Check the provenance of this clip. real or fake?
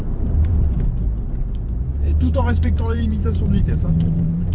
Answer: fake